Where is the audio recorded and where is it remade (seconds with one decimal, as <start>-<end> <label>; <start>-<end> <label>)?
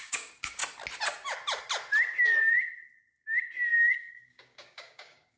0.0-0.6 remade; 0.6-3.8 recorded; 3.8-5.4 remade